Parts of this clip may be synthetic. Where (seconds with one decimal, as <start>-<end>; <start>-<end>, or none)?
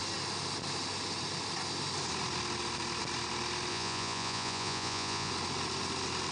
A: 3.7-5.3